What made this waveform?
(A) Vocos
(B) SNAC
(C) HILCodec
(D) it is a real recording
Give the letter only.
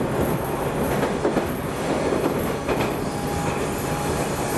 D